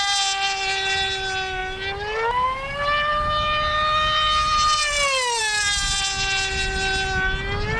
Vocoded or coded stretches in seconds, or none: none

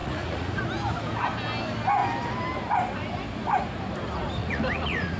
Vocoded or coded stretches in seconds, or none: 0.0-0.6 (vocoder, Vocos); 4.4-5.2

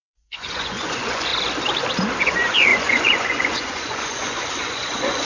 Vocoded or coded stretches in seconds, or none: 0.0-1.3 (vocoder, Vocos); 2.2-5.2

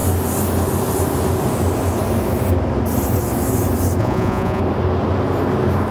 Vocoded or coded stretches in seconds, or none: 4.0-4.6 (vocoder, Vocos)

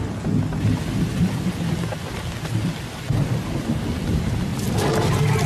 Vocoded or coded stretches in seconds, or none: none

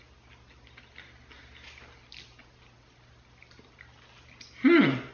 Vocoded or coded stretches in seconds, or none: none

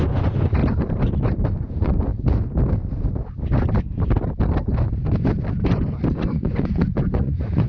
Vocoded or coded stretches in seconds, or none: 0.0-0.6 (vocoder, Vocos); 1.7-2.1; 6.1-7.7

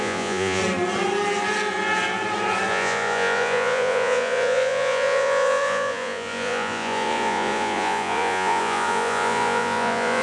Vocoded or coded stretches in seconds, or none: 0.0-0.6 (vocoder, Vocos); 2.7-10.2